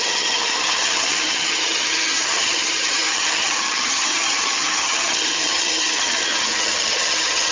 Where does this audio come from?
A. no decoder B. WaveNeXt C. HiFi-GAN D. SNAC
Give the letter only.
C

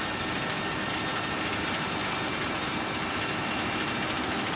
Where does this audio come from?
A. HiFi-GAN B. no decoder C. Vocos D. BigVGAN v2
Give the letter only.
B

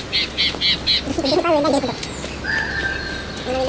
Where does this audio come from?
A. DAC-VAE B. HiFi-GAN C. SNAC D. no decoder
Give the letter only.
D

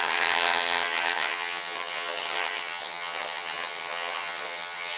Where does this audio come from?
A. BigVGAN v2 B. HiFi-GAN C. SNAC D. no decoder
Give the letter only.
B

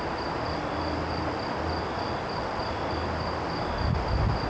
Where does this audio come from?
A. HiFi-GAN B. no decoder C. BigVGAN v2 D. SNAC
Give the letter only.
B